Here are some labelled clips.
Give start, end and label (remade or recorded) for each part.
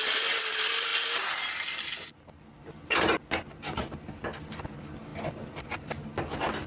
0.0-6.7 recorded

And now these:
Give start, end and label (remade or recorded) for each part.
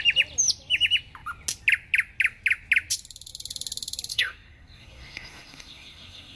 0.0-4.1 recorded; 4.1-6.4 remade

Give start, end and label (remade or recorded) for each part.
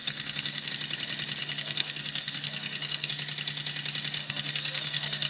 0.0-0.7 remade; 0.7-1.4 recorded; 1.4-3.1 remade; 3.1-4.2 recorded; 4.2-5.3 remade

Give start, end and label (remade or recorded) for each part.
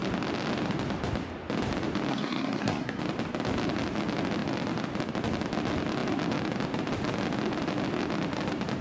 0.0-2.1 recorded; 2.1-3.0 remade; 3.0-8.8 recorded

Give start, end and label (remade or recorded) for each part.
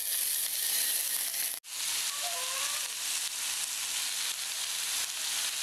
0.0-5.6 recorded